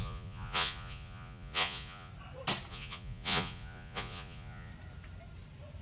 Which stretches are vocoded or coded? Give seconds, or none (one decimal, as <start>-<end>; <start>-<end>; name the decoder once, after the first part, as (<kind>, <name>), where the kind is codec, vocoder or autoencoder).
0.0-2.1 (vocoder, Vocos); 2.7-4.7